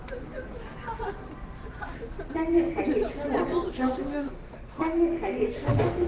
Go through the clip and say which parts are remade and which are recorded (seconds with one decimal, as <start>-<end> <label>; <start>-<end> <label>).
0.0-3.7 recorded; 3.7-6.1 remade